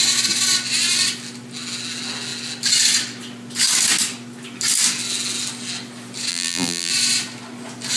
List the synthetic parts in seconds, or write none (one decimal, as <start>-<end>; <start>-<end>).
6.3-6.9